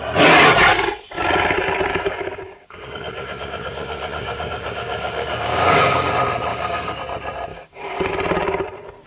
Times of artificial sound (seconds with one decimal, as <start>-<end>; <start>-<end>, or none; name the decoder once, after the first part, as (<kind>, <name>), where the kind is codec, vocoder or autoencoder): 1.9-6.1 (codec, DAC); 6.5-7.0; 7.5-8.1